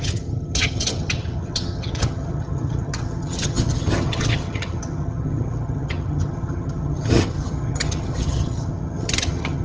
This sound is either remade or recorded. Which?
remade